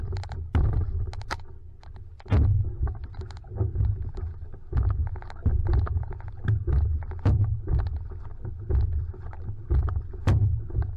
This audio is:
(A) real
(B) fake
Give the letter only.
A